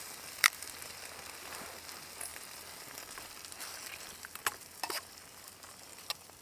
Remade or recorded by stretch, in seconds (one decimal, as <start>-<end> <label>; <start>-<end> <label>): 0.0-6.4 recorded